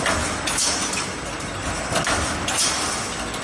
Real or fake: real